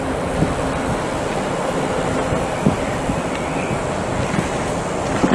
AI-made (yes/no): no